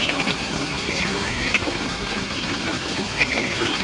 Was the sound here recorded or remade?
remade